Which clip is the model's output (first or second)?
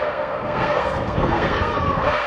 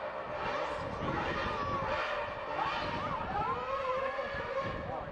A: first